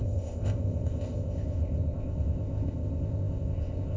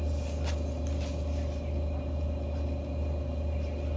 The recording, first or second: second